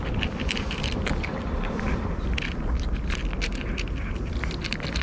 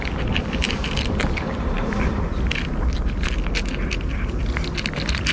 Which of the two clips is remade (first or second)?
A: first